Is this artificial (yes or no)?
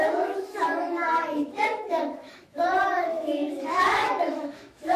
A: yes